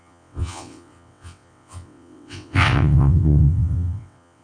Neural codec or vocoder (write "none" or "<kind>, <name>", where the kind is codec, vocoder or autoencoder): vocoder, WaveNeXt